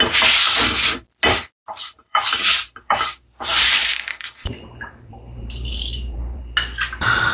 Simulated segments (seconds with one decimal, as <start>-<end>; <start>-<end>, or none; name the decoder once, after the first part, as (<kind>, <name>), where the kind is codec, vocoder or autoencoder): 2.0-6.4 (vocoder, BigVGAN v2)